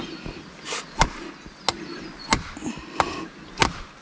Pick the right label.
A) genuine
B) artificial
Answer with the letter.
A